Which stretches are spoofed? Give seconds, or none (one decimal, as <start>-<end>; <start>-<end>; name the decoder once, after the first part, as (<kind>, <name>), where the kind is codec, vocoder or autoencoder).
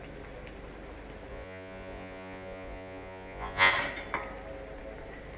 1.3-3.7 (vocoder, Vocos)